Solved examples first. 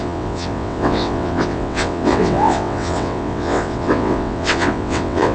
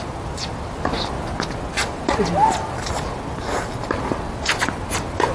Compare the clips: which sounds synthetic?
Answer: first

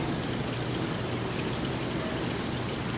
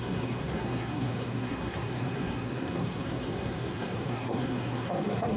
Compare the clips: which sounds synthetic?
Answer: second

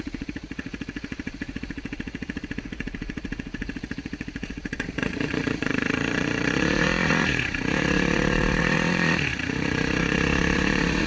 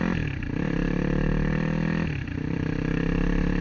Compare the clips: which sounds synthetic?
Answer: first